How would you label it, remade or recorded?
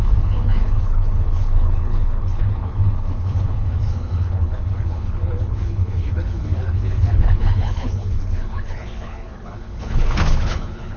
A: remade